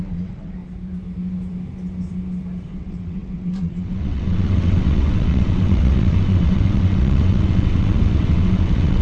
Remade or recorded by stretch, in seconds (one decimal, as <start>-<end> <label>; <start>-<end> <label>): 0.0-0.6 remade; 0.6-2.7 recorded; 2.7-9.0 remade